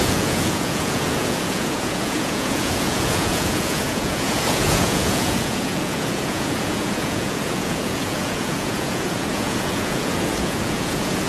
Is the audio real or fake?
fake